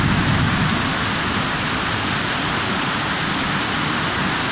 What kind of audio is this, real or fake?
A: real